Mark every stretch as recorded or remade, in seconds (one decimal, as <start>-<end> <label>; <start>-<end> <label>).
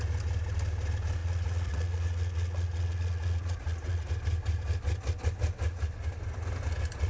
0.0-1.2 recorded; 1.2-4.1 remade; 4.1-7.1 recorded